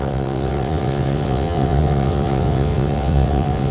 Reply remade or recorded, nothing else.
remade